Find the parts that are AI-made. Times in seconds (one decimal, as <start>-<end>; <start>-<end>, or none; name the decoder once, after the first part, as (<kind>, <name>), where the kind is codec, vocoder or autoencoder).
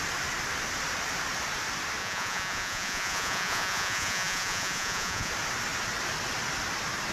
2.0-5.3 (vocoder, Vocos)